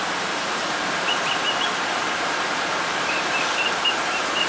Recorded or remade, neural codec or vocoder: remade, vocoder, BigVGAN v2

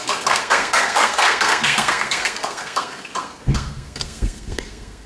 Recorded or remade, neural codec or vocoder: remade, codec, SNAC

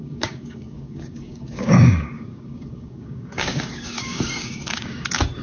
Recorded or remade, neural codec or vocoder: remade, codec, DAC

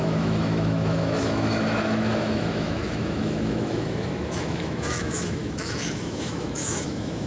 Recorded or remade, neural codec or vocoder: remade, autoencoder, DAC-VAE